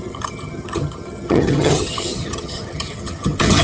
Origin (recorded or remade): remade